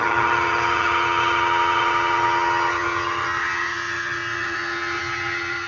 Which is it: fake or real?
fake